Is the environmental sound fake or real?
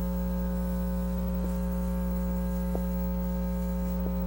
fake